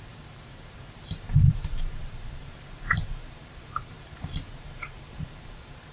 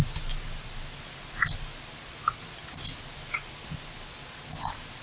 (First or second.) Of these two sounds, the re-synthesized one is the first